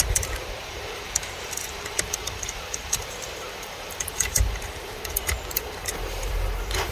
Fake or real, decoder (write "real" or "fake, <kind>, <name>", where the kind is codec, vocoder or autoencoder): fake, vocoder, BigVGAN v2